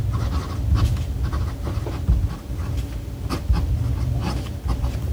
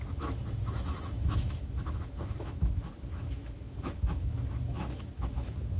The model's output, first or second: second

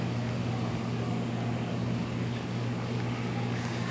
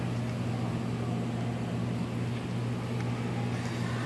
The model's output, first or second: first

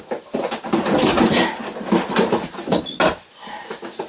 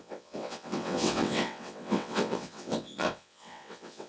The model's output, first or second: second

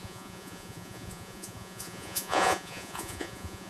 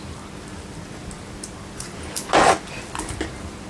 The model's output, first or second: first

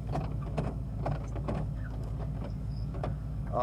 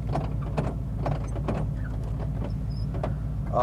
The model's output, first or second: first